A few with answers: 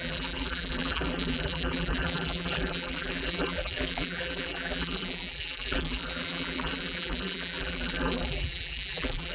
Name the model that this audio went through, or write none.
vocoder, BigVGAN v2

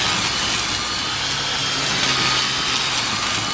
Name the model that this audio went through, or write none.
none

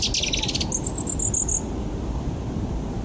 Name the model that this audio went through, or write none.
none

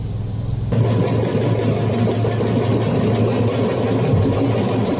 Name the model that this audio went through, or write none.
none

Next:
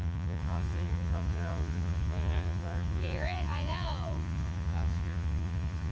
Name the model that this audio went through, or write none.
vocoder, Vocos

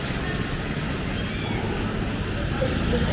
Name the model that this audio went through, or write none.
none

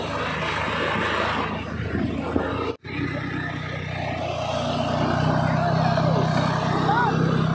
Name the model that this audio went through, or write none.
none